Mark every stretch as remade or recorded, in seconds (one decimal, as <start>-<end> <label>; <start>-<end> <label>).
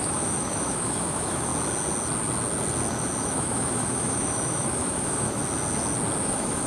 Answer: 0.0-1.5 remade; 1.5-3.2 recorded; 3.2-5.4 remade; 5.4-6.2 recorded; 6.2-6.7 remade